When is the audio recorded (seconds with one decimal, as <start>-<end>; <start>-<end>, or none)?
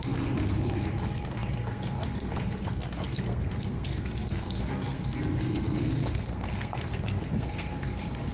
none